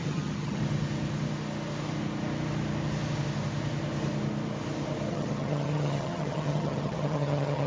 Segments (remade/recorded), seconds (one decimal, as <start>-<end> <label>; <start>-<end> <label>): 0.0-0.6 remade; 0.6-5.1 recorded; 5.1-7.7 remade

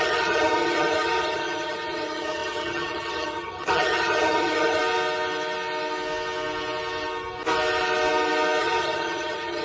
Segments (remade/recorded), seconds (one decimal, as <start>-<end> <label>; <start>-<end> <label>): 0.0-4.8 remade; 4.8-8.6 recorded; 8.6-9.6 remade

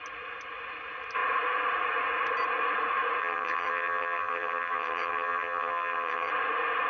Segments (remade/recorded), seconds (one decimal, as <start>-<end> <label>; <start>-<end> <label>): 0.0-3.2 recorded; 3.2-6.3 remade; 6.3-6.9 recorded

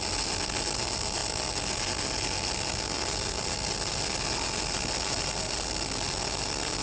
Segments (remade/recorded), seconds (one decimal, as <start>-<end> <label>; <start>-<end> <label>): 0.0-6.8 recorded

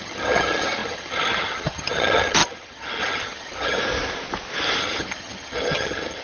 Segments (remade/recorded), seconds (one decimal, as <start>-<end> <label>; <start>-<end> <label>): 0.0-3.8 remade; 3.8-4.8 recorded; 4.8-6.2 remade